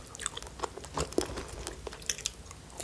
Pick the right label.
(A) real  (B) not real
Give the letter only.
A